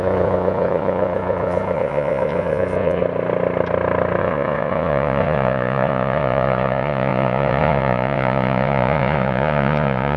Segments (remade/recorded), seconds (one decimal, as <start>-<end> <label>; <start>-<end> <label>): 0.0-3.0 remade; 3.0-4.2 recorded; 4.2-10.2 remade

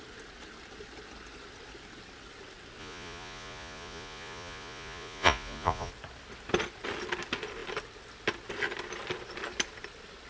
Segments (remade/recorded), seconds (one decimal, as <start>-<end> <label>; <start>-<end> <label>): 0.0-2.8 recorded; 2.8-5.9 remade; 5.9-10.3 recorded